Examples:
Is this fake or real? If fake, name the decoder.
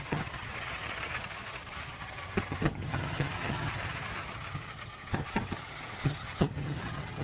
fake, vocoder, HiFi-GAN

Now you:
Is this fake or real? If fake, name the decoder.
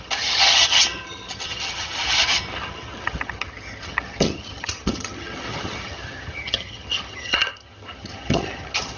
fake, vocoder, HiFi-GAN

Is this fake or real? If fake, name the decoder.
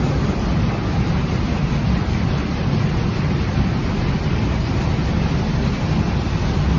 real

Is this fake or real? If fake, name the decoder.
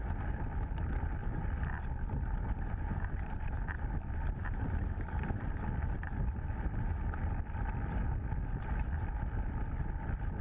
real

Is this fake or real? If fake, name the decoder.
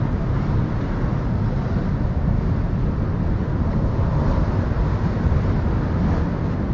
real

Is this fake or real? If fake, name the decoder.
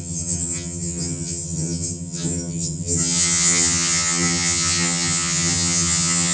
fake, vocoder, HiFi-GAN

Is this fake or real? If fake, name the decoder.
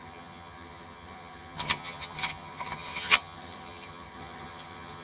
fake, vocoder, HiFi-GAN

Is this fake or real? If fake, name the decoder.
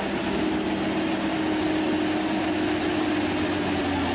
real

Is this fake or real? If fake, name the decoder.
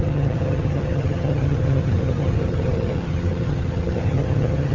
fake, vocoder, HiFi-GAN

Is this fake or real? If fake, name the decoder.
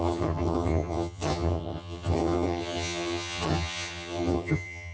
fake, vocoder, HiFi-GAN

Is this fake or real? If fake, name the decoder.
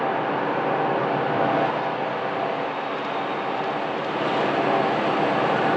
real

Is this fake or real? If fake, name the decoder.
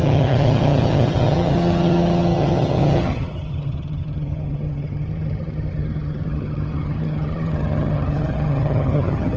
fake, vocoder, HiFi-GAN